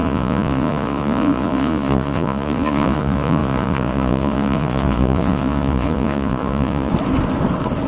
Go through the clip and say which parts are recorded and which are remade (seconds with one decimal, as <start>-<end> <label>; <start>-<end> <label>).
0.0-6.9 remade; 6.9-7.9 recorded